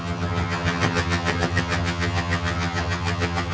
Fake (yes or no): yes